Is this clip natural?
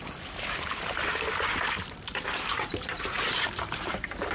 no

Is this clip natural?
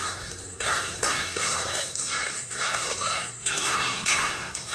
no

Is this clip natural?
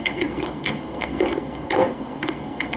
no